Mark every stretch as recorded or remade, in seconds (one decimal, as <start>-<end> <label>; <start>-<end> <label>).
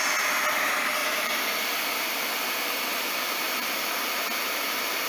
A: 0.0-1.0 recorded; 1.0-4.1 remade; 4.1-5.1 recorded